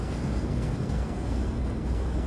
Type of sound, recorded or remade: remade